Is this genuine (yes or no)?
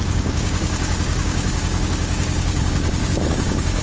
no